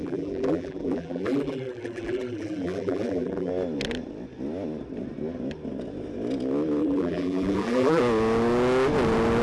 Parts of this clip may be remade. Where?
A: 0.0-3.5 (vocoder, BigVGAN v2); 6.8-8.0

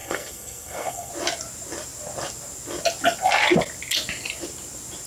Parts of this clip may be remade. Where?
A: 0.0-1.1 (codec, SNAC)

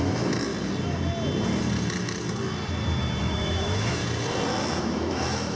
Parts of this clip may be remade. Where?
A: 0.0-0.5 (autoencoder, DAC-VAE); 3.2-4.0; 4.8-5.5

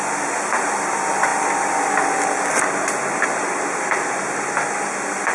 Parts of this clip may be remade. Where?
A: none